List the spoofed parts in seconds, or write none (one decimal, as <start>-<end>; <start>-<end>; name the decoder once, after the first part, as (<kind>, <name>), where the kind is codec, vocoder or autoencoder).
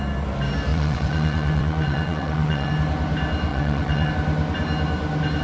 0.7-2.7 (vocoder, WaveNeXt); 3.5-4.1